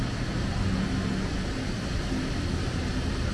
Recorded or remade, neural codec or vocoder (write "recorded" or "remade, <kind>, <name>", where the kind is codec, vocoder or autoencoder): recorded